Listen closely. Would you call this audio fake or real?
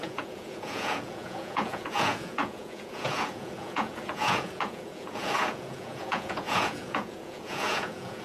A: fake